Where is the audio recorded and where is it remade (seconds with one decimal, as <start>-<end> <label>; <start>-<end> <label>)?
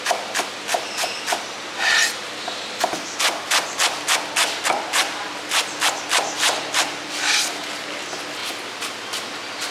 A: 0.0-9.7 recorded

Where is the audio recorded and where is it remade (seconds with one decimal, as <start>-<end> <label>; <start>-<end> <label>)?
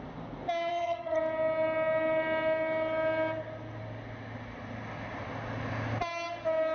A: 0.0-0.7 recorded; 0.7-1.2 remade; 1.2-6.7 recorded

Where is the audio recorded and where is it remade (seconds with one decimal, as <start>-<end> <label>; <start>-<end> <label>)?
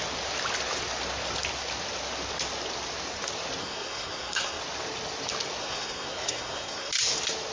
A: 0.0-3.6 recorded; 3.6-4.6 remade; 4.6-5.6 recorded; 5.6-6.9 remade; 6.9-7.5 recorded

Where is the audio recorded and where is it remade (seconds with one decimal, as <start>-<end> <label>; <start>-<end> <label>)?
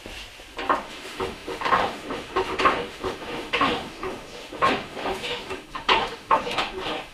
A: 0.0-0.8 recorded; 0.8-7.1 remade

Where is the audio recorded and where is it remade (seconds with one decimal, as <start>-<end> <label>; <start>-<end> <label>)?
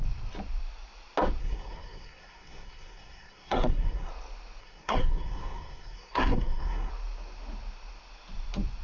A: 0.0-1.4 recorded; 1.4-4.1 remade; 4.1-4.6 recorded; 4.6-6.9 remade; 6.9-8.8 recorded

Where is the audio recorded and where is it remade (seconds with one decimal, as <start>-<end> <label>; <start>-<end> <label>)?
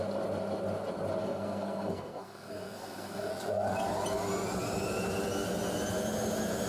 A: 0.0-1.2 recorded; 1.2-3.3 remade; 3.3-6.7 recorded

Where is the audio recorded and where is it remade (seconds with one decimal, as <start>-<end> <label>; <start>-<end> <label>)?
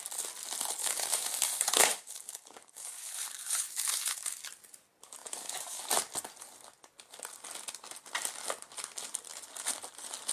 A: 0.0-0.8 recorded; 0.8-4.4 remade; 4.4-5.2 recorded; 5.2-5.8 remade; 5.8-10.3 recorded